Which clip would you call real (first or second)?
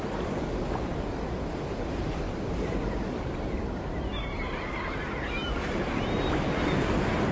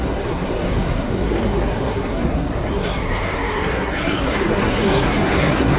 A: first